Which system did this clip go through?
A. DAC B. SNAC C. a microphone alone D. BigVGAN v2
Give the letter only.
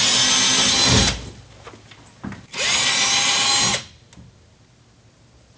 C